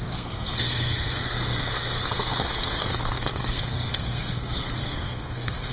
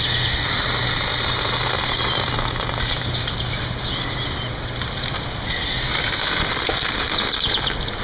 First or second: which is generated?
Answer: first